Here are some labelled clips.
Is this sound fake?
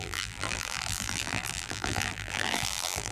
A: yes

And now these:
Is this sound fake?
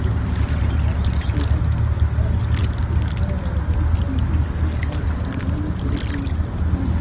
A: no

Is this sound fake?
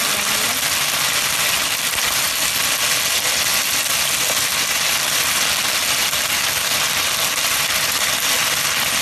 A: no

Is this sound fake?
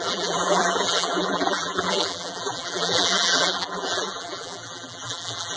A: yes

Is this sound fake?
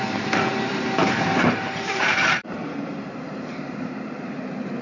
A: yes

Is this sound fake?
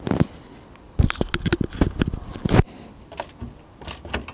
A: no